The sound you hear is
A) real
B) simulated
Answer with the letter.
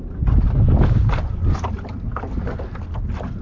A